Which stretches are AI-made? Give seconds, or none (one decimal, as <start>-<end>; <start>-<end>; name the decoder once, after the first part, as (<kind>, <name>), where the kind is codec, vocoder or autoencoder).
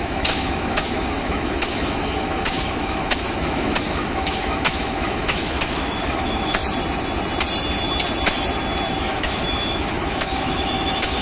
0.0-6.6 (autoencoder, DAC-VAE); 9.0-11.2